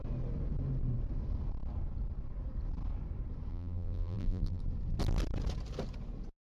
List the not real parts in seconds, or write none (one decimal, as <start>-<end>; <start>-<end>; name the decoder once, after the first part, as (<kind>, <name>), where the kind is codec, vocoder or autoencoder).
3.5-4.6 (vocoder, BigVGAN v2)